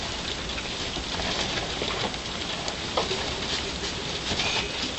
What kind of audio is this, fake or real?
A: real